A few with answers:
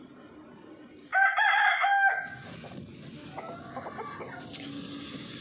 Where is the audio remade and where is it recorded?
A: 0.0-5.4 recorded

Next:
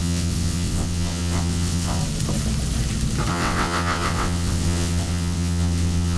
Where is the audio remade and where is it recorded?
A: 0.0-2.0 remade; 2.0-3.3 recorded; 3.3-6.2 remade